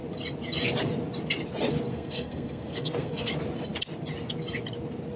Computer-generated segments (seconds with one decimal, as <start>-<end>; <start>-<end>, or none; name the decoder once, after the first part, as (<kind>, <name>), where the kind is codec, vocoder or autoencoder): 1.9-3.3 (codec, SNAC)